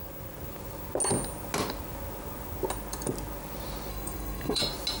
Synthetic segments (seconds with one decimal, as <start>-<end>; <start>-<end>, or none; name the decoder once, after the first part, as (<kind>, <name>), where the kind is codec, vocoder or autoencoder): 3.9-4.6 (codec, SNAC)